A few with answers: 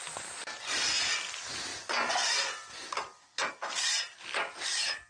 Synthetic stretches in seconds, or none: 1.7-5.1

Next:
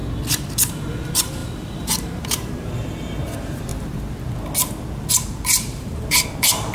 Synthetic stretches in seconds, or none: 0.7-3.7; 5.1-6.7

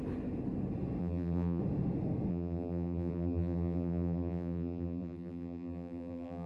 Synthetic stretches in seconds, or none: 1.0-1.6; 2.3-6.5

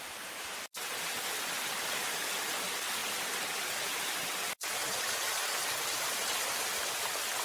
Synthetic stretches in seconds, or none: none

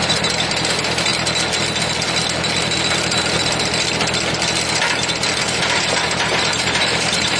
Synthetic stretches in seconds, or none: 0.0-1.1; 5.4-7.4

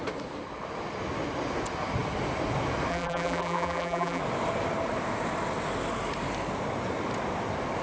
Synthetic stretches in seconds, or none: 2.9-4.2